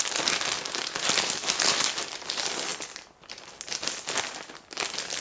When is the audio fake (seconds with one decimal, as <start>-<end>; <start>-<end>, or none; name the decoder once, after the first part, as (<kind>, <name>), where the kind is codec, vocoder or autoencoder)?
none